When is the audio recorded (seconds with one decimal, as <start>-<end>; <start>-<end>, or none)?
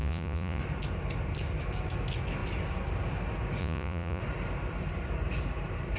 0.6-3.6; 4.2-6.0